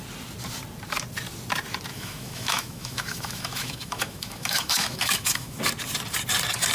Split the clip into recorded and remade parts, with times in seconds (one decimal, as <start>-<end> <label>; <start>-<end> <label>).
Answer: 0.0-1.9 recorded; 1.9-5.6 remade; 5.6-6.7 recorded